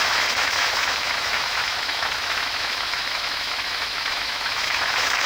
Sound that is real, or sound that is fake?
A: fake